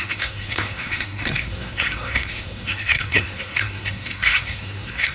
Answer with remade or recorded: remade